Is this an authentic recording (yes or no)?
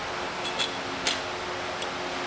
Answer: yes